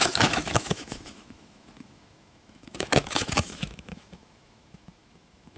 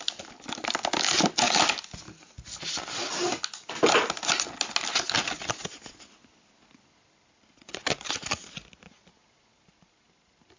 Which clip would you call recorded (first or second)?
second